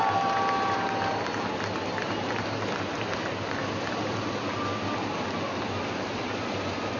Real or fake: real